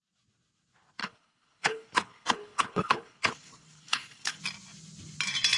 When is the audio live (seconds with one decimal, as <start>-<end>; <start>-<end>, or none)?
0.0-1.0; 4.4-5.6